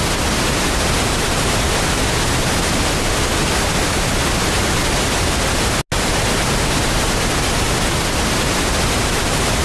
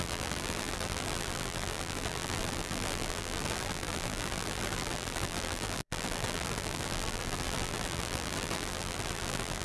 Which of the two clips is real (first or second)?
first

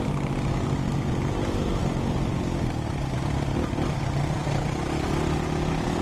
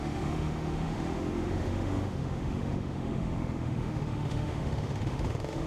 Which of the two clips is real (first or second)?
first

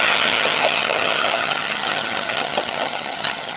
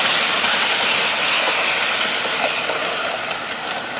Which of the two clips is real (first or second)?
second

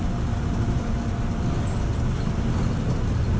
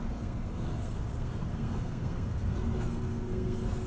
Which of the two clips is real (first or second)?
first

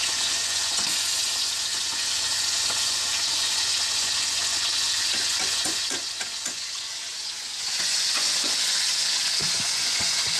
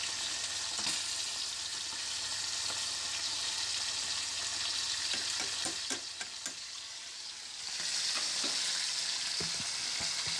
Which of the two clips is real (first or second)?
second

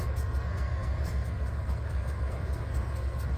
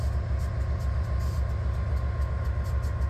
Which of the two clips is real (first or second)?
second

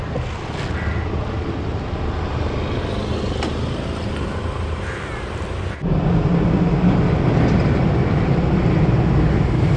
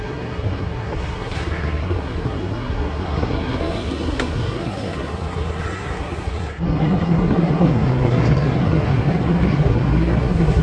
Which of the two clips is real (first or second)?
first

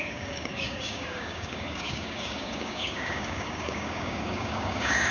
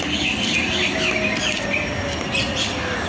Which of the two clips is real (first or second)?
second